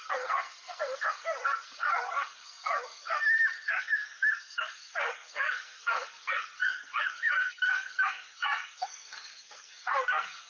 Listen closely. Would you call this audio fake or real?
fake